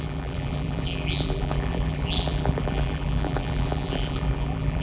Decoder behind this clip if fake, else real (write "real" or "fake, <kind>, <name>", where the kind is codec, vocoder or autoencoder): fake, vocoder, BigVGAN v2